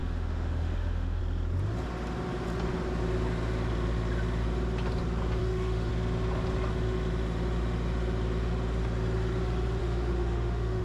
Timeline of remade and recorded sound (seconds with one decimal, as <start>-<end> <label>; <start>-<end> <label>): 0.0-1.2 remade; 1.2-5.4 recorded; 5.4-5.9 remade; 5.9-9.8 recorded; 9.8-10.8 remade